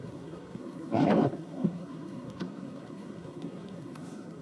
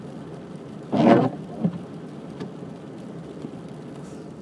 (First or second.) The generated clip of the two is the first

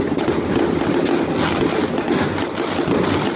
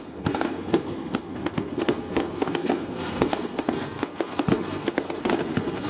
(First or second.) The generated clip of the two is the second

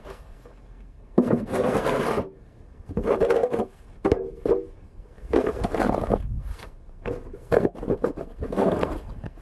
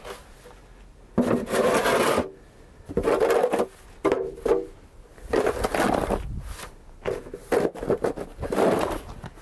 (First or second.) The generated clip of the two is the first